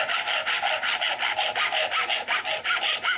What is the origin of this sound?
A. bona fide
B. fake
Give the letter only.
A